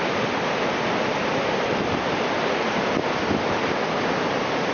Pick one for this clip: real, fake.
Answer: real